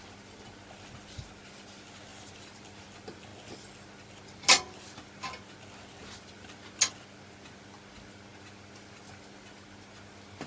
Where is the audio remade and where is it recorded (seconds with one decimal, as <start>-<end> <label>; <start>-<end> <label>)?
0.0-2.1 recorded; 2.1-2.8 remade; 2.8-10.5 recorded